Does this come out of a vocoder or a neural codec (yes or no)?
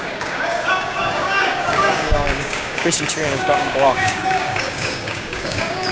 yes